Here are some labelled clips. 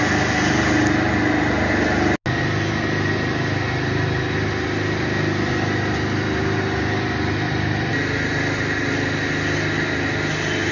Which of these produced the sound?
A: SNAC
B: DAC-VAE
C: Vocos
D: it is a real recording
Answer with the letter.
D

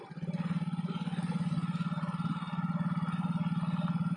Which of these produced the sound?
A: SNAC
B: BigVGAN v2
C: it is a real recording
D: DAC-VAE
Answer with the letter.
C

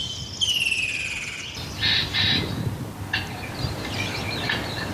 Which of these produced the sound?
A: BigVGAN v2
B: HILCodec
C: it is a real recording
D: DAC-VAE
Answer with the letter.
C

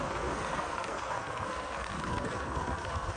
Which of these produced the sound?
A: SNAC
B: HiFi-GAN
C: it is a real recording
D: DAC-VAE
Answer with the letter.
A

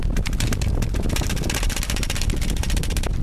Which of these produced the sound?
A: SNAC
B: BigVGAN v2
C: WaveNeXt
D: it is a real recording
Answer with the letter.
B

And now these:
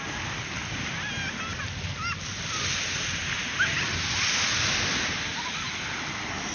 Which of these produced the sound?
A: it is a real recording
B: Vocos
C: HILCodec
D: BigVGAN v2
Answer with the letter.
A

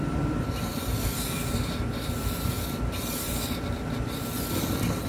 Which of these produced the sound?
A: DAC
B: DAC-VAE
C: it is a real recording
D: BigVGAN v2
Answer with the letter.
D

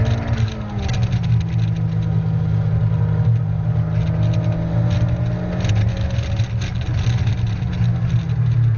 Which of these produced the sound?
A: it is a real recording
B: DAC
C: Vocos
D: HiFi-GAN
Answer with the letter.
A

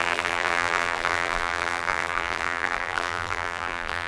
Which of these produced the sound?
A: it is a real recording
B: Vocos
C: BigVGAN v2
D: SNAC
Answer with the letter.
C